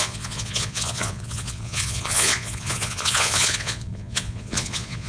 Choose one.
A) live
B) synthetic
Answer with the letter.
B